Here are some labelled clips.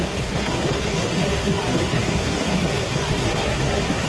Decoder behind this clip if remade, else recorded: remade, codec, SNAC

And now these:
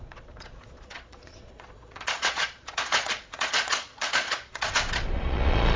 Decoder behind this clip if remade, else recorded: remade, vocoder, Vocos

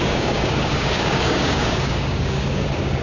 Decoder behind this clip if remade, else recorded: remade, codec, DAC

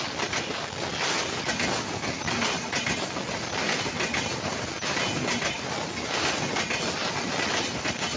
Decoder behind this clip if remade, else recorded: recorded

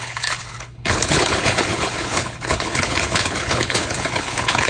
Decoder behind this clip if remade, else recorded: remade, codec, HILCodec